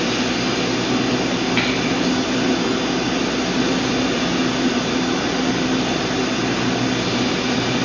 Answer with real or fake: real